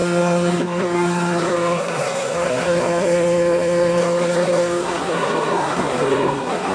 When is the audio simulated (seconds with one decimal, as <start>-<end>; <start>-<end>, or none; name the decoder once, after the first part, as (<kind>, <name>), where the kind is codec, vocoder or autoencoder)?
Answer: 0.0-6.7 (codec, SNAC)